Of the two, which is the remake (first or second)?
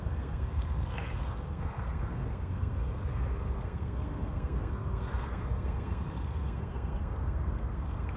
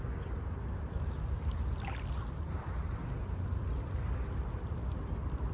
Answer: first